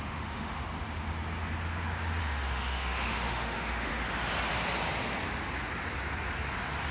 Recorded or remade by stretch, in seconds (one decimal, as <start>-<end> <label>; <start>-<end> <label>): 0.0-0.6 remade; 0.6-2.2 recorded; 2.2-3.9 remade; 3.9-6.9 recorded